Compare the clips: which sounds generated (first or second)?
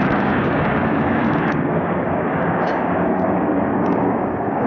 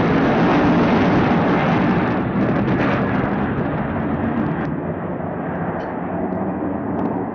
first